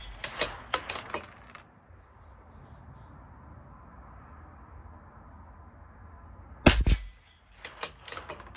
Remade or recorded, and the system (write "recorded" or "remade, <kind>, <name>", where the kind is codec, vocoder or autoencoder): recorded